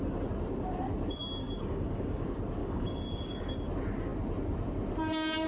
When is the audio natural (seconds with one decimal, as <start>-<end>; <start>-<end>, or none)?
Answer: 0.0-1.2; 2.2-2.6; 3.4-5.5